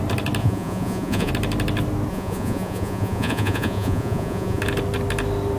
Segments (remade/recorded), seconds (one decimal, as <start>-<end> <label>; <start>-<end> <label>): 0.0-0.4 recorded; 0.4-1.3 remade; 1.3-2.1 recorded; 2.1-4.6 remade; 4.6-5.6 recorded

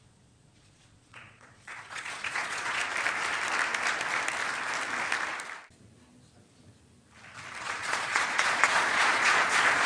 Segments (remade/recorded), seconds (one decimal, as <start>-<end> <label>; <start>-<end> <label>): 0.0-2.8 remade; 2.8-7.6 recorded; 7.6-9.9 remade